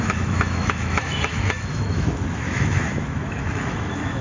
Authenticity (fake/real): fake